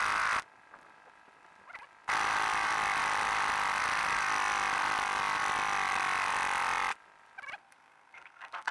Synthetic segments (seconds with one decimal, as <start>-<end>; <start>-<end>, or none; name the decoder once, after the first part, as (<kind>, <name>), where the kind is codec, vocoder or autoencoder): 7.6-8.7 (codec, SNAC)